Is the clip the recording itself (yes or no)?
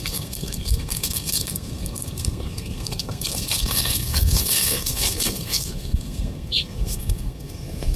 no